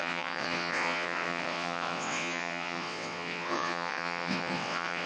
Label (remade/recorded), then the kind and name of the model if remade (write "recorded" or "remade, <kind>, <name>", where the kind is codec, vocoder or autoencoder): remade, vocoder, WaveNeXt